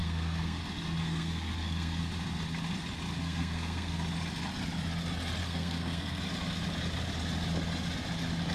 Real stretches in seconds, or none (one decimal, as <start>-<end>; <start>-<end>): 0.6-1.0; 2.0-3.2; 4.0-5.4; 6.2-8.5